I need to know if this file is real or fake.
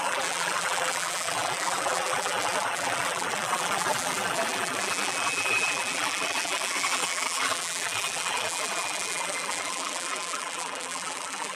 fake